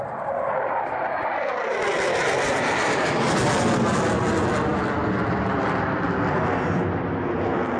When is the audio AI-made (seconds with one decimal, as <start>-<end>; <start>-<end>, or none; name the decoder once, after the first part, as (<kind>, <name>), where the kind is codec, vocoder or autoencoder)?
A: none